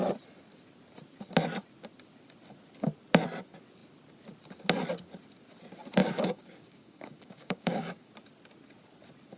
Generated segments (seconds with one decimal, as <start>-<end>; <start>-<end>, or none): 6.0-8.1